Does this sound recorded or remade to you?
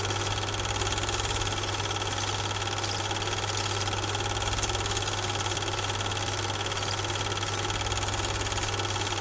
recorded